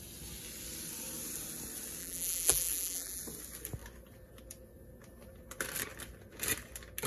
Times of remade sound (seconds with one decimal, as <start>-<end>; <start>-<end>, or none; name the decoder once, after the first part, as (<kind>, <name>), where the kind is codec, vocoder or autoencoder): 2.0-3.2 (vocoder, BigVGAN v2)